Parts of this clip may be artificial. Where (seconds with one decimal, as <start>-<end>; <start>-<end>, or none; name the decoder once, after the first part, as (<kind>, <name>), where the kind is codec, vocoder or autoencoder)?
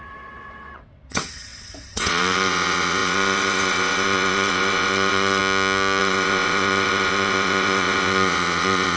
0.0-5.4 (vocoder, WaveNeXt); 6.0-9.0